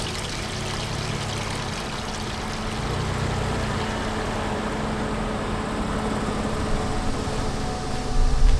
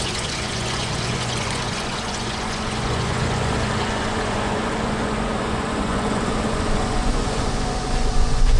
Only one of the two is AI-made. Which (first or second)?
second